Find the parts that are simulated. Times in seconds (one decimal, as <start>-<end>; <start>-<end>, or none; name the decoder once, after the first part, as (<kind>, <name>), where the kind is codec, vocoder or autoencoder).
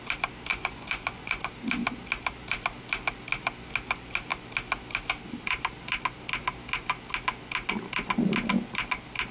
0.5-1.5 (vocoder, Vocos)